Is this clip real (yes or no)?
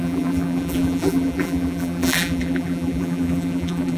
no